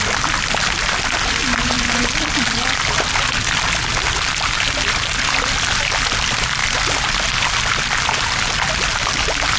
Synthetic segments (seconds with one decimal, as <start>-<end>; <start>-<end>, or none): 6.6-7.5